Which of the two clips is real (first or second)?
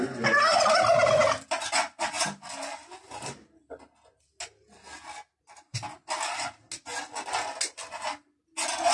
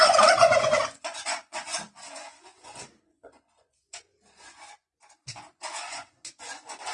first